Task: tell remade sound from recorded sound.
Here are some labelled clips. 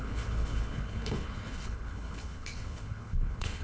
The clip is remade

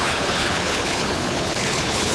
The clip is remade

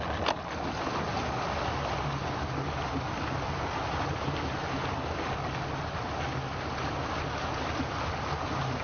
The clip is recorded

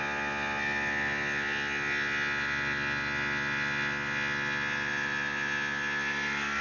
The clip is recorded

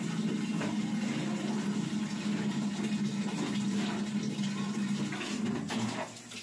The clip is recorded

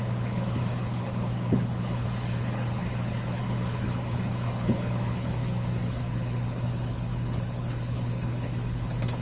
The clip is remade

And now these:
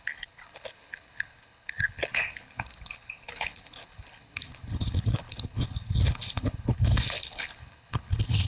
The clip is remade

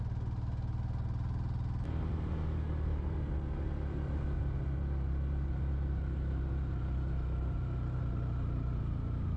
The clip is recorded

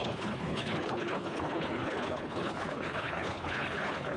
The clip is remade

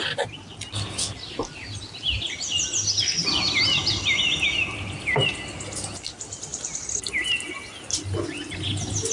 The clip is recorded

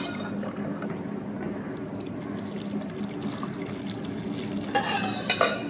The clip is recorded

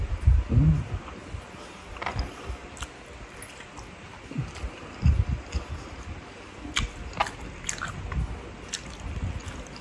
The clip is recorded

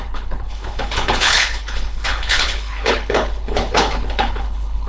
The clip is remade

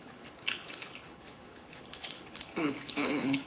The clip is remade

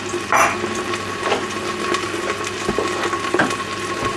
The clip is recorded